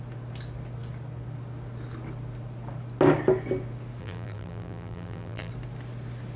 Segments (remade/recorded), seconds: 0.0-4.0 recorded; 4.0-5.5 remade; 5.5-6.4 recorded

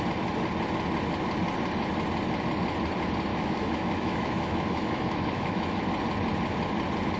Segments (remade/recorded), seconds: 0.0-3.3 recorded; 3.3-5.8 remade; 5.8-7.2 recorded